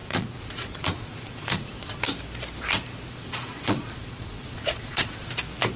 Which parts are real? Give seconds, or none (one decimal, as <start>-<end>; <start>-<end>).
2.0-3.1; 5.3-5.8